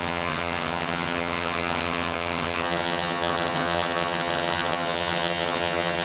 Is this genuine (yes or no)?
no